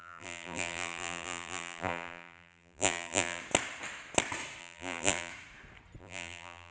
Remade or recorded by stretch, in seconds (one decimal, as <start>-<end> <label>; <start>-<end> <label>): 0.0-3.4 remade; 3.4-4.6 recorded; 4.6-5.3 remade; 5.3-6.0 recorded; 6.0-6.7 remade